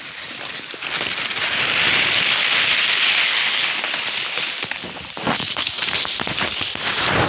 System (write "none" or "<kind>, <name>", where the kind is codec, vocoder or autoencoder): none